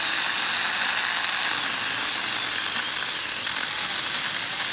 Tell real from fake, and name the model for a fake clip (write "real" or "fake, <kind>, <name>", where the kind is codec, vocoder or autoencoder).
real